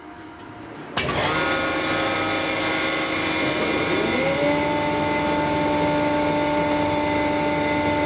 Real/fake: real